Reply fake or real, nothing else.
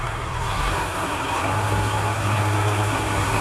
fake